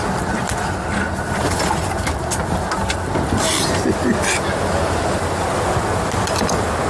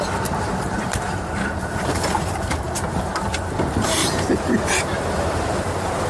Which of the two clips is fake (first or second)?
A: second